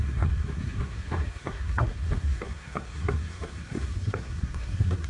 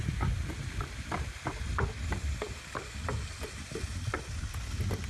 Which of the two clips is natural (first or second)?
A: second